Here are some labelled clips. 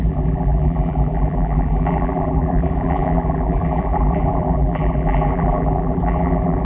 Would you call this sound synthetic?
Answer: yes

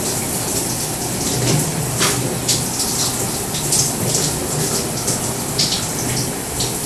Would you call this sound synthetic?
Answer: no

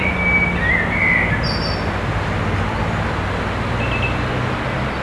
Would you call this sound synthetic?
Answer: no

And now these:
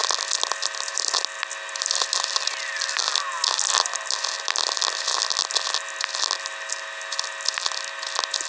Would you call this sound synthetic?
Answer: no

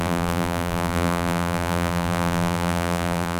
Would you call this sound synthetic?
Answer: yes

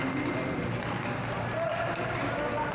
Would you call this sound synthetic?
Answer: no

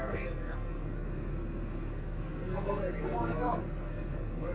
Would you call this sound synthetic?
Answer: yes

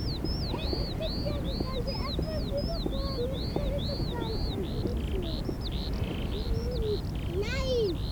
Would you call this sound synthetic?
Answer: no